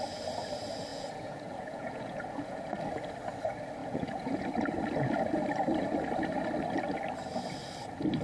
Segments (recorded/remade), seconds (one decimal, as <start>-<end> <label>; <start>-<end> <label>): 0.0-0.9 recorded; 0.9-2.7 remade; 2.7-3.8 recorded; 3.8-4.4 remade; 4.4-8.2 recorded